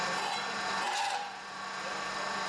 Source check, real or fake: real